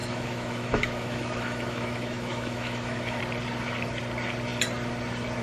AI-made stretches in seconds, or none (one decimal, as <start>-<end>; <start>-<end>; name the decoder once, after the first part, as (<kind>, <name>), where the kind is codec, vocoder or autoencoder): 0.0-3.2 (autoencoder, DAC-VAE)